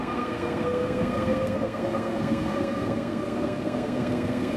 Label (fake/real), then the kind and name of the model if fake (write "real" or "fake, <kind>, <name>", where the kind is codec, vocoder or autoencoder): fake, codec, SNAC